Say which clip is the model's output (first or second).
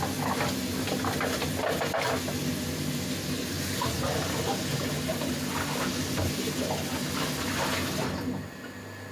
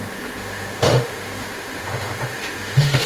second